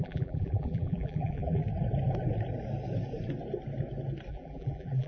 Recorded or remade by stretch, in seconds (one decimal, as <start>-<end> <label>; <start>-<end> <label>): 0.0-1.6 remade; 1.6-4.3 recorded; 4.3-5.1 remade